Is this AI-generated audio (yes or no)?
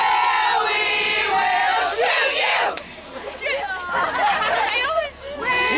no